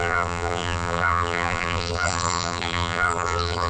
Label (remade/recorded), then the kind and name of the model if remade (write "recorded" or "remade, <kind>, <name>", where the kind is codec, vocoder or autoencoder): remade, vocoder, BigVGAN v2